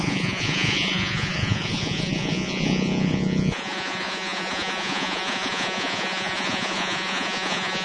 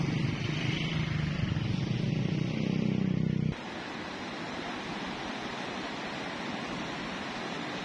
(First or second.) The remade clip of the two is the first